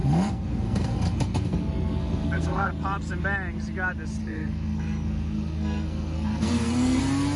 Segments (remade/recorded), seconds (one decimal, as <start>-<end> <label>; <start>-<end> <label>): 0.0-2.7 remade; 2.7-4.2 recorded; 4.2-7.0 remade; 7.0-7.4 recorded